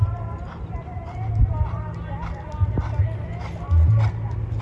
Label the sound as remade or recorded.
recorded